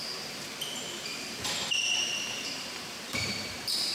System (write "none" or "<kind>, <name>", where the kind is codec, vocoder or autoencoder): vocoder, BigVGAN v2